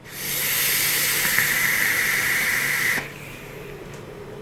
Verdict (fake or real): real